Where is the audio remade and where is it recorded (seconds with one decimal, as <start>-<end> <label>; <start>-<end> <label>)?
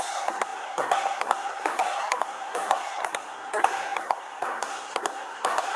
0.0-5.8 remade